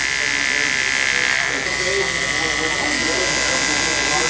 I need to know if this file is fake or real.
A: real